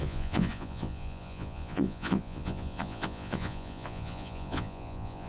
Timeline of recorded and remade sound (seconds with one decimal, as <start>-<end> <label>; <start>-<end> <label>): 0.0-5.3 remade